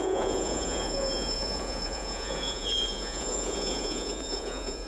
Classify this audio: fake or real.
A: fake